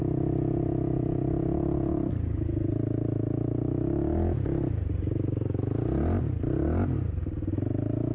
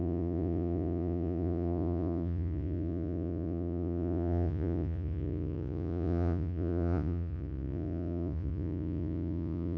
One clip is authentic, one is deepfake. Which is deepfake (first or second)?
second